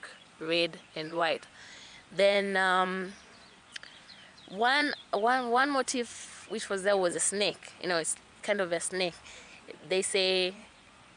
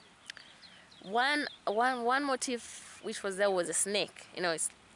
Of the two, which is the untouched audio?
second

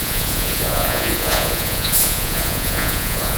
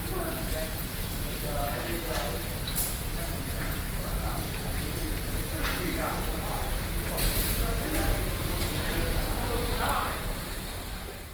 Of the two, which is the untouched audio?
second